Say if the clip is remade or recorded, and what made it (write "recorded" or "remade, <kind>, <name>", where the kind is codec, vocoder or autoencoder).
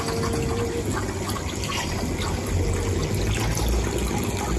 recorded